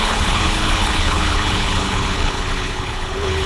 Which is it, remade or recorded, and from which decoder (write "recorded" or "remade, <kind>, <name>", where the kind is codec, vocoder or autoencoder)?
remade, codec, HILCodec